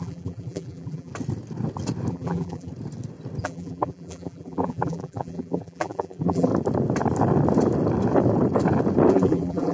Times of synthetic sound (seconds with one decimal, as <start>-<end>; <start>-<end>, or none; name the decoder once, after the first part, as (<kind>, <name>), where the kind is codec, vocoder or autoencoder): 0.0-1.1 (vocoder, BigVGAN v2); 2.1-2.7; 3.4-6.5; 9.1-9.7